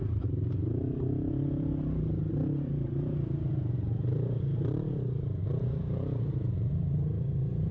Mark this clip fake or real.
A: fake